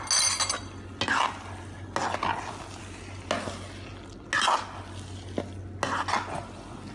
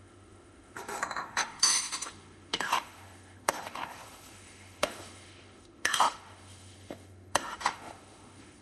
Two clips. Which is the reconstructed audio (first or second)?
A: second